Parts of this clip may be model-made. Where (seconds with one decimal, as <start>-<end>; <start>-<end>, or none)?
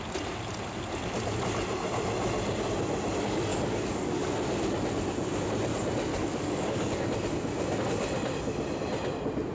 3.5-4.3; 6.1-7.0